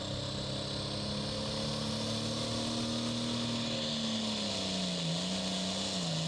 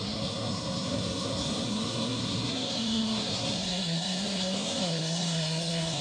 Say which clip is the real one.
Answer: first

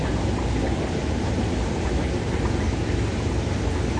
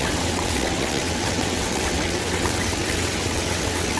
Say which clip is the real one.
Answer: first